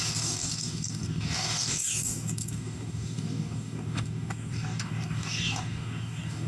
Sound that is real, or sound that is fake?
fake